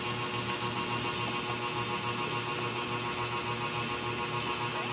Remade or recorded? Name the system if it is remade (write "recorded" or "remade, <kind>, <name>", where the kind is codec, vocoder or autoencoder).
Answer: recorded